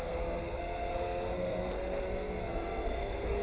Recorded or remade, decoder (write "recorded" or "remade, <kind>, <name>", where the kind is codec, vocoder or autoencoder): remade, codec, SNAC